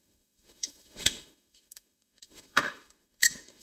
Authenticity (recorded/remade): remade